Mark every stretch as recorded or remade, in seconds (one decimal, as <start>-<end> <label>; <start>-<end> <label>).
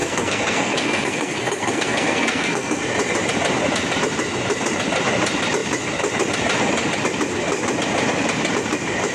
0.0-2.8 remade; 2.8-9.1 recorded